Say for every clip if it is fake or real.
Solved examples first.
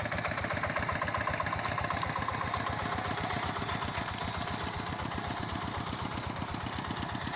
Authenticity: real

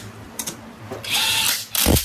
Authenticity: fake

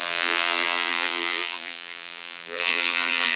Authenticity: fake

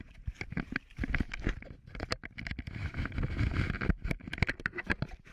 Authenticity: real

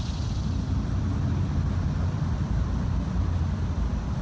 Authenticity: fake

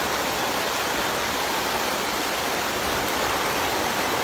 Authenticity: fake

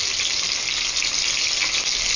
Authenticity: real